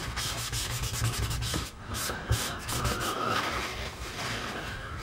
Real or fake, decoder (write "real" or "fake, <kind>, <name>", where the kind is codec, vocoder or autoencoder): fake, codec, DAC